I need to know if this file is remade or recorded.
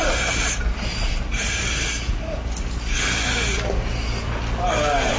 recorded